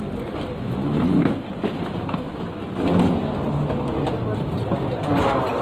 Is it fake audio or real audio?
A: real